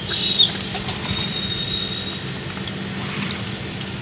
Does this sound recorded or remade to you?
recorded